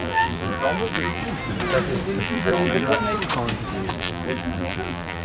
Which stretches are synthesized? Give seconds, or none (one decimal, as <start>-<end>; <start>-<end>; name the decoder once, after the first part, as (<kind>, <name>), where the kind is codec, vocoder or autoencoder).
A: 0.0-1.2 (vocoder, BigVGAN v2); 2.2-3.0; 3.9-5.2